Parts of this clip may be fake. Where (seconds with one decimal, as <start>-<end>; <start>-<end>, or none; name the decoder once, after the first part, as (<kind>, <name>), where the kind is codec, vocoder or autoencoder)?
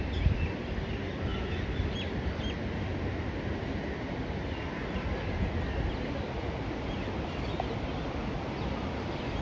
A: none